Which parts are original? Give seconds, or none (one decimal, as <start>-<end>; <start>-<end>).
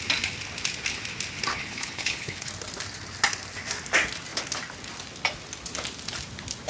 0.0-1.5; 2.5-6.7